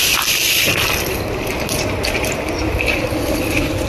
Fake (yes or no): no